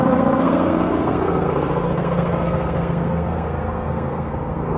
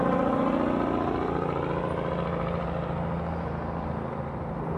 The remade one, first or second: first